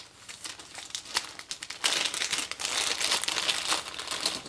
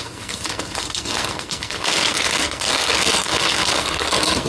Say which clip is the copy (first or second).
second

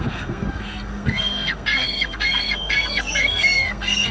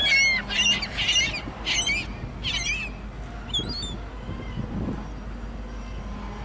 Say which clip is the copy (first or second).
first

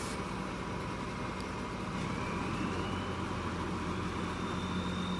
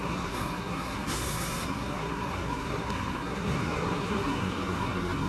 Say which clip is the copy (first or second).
second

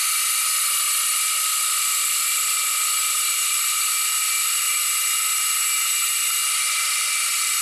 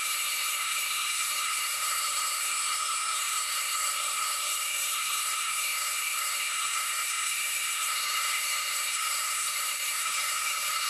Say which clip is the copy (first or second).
second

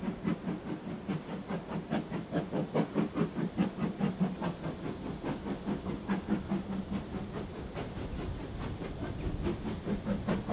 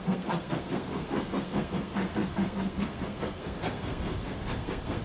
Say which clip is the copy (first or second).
second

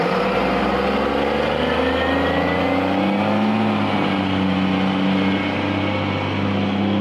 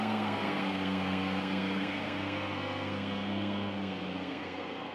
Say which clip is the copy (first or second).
second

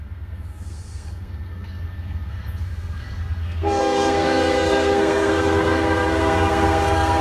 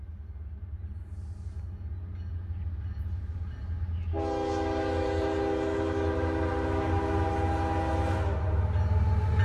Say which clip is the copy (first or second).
first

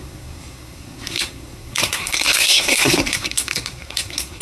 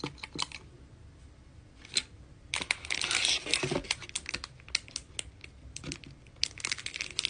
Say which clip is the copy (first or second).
first